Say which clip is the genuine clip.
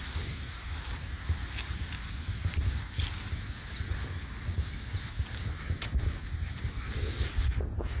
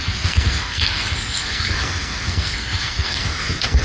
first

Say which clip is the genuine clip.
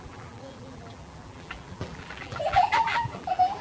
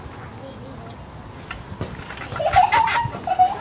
second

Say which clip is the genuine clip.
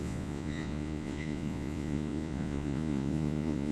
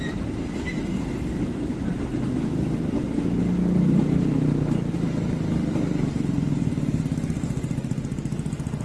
second